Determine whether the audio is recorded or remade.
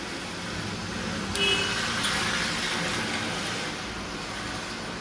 recorded